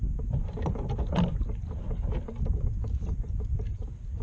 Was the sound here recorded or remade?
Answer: recorded